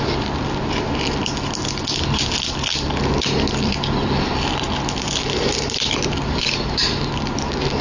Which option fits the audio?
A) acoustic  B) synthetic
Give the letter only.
A